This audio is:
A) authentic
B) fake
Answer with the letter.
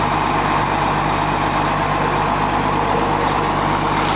A